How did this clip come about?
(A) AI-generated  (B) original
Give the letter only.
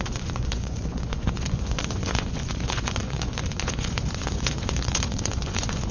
A